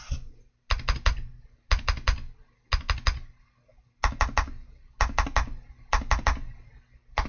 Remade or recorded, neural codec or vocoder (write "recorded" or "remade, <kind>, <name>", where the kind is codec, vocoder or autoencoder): recorded